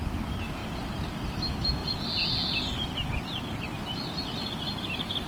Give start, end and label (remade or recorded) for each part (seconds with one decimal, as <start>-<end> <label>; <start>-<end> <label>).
0.0-5.3 recorded